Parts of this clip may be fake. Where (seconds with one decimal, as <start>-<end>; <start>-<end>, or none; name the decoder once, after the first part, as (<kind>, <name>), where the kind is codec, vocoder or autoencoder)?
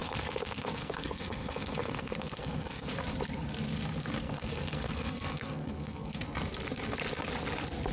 0.0-2.9 (codec, SNAC); 4.2-6.2